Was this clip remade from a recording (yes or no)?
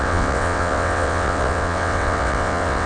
yes